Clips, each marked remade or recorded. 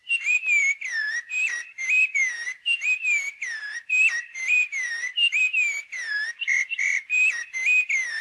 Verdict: remade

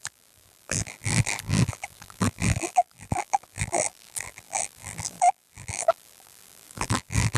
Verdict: remade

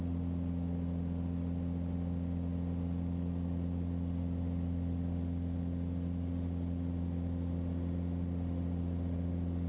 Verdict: recorded